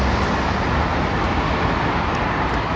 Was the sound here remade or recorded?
recorded